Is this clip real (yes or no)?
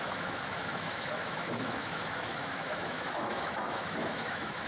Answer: no